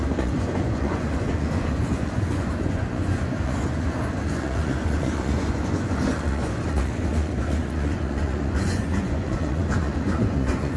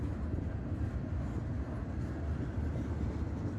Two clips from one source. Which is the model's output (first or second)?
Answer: first